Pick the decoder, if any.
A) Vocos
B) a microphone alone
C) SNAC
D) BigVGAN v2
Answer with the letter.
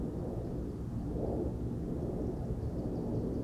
B